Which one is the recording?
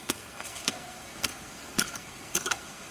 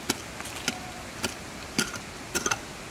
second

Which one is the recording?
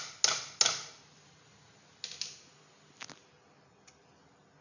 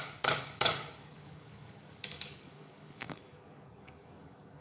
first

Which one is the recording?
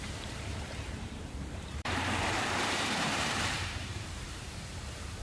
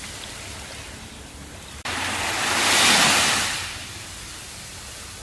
second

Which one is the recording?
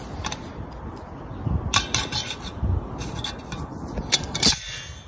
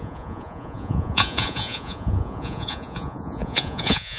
first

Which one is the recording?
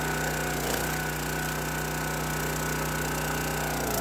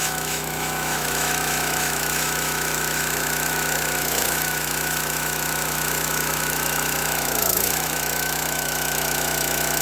first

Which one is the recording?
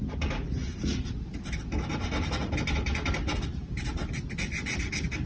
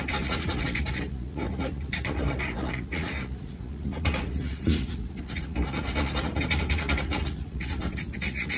first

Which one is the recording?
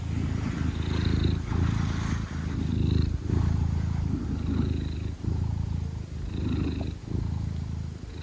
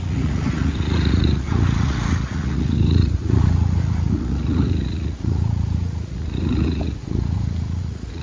first